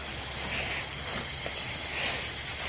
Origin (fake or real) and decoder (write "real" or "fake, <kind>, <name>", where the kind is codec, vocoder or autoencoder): real